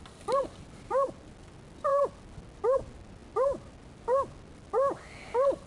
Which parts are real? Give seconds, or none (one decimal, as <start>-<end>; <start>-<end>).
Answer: 0.0-5.7